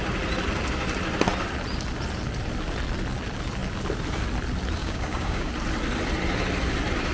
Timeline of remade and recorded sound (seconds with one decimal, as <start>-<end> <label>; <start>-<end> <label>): 0.0-4.8 recorded; 4.8-5.5 remade; 5.5-7.1 recorded